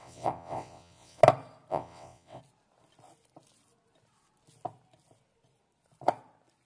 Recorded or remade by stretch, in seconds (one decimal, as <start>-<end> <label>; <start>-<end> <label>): 0.0-1.2 remade; 1.2-1.7 recorded; 1.7-2.4 remade; 2.4-6.7 recorded